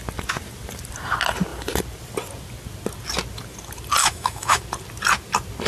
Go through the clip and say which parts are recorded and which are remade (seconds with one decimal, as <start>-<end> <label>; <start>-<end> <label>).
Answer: 0.0-4.0 recorded; 4.0-4.6 remade; 4.6-5.7 recorded